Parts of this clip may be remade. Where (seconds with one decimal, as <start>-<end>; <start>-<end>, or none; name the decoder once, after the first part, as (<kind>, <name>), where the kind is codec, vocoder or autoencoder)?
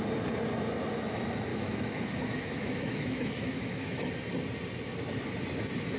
1.5-4.1 (autoencoder, DAC-VAE)